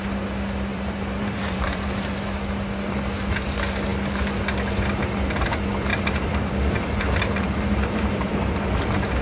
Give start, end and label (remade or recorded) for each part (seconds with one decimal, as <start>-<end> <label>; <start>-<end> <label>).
0.0-0.7 recorded; 0.7-2.5 remade; 2.5-5.9 recorded; 5.9-8.5 remade; 8.5-9.2 recorded